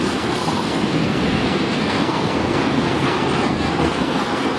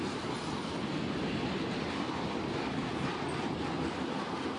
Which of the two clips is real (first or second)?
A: second